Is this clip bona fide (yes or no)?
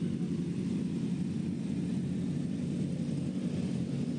yes